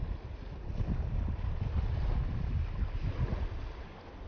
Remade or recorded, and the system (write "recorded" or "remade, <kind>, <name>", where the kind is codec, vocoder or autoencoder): recorded